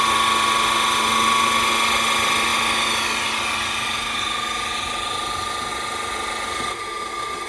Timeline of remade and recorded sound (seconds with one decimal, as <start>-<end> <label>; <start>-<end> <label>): 0.0-7.5 recorded